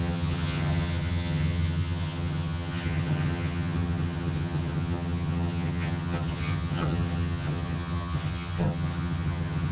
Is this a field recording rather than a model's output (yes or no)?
no